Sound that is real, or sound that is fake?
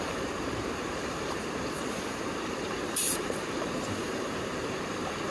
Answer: fake